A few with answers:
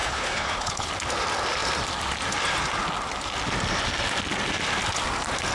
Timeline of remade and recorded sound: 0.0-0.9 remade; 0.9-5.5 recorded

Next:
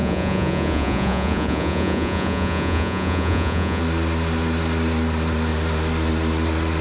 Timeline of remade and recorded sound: 0.0-3.8 remade; 3.8-6.8 recorded

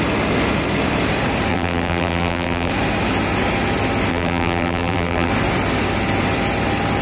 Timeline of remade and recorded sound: 0.0-1.5 recorded; 1.5-2.7 remade; 2.7-4.1 recorded; 4.1-5.3 remade; 5.3-7.0 recorded

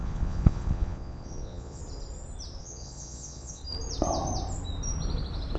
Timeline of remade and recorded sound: 0.0-1.8 remade; 1.8-2.6 recorded; 2.6-3.6 remade; 3.6-5.6 recorded

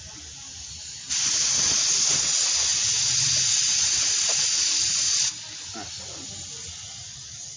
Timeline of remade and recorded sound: 0.0-7.6 recorded

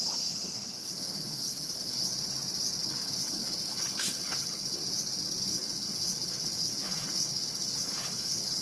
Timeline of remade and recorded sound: 0.0-2.1 remade; 2.1-2.8 recorded; 2.8-4.8 remade; 4.8-5.4 recorded; 5.4-8.6 remade

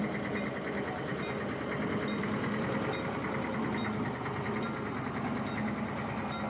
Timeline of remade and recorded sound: 0.0-6.5 recorded